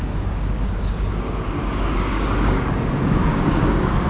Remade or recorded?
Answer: remade